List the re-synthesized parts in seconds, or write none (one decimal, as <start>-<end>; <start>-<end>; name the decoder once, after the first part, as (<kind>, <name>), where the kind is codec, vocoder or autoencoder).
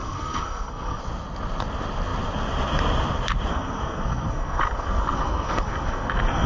0.0-1.0 (codec, SNAC); 3.5-6.5